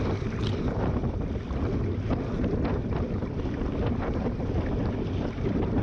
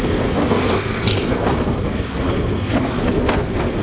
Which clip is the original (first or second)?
first